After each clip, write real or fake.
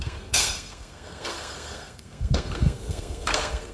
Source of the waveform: fake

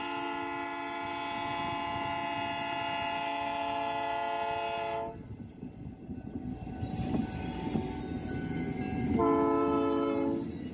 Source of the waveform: real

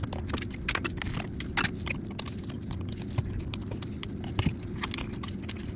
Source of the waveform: real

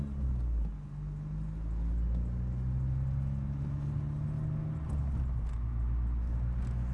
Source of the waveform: real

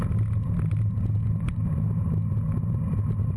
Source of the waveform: real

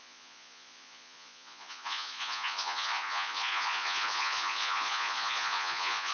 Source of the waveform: fake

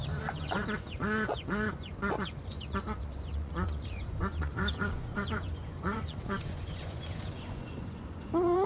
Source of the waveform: fake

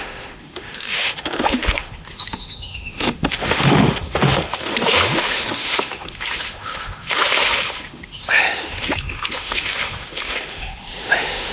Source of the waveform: fake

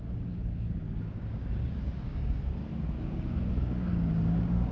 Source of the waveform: fake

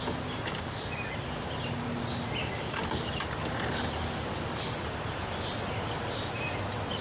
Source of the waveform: real